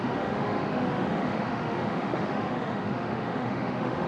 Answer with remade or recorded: remade